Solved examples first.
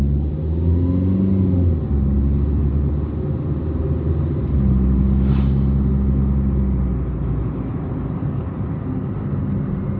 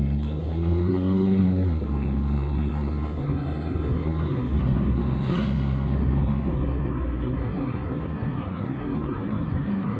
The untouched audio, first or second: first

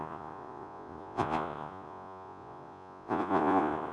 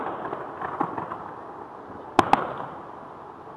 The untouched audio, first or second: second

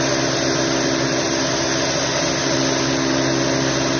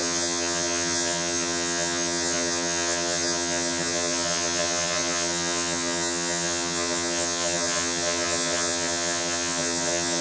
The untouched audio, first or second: first